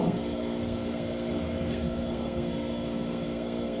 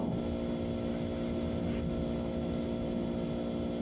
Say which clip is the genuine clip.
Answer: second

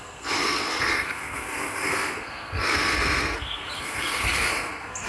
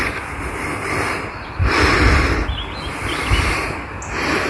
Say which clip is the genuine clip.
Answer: second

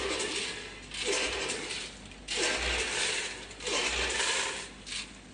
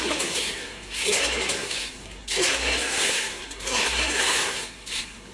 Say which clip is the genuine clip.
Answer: first